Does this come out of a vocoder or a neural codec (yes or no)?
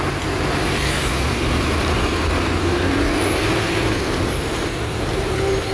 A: yes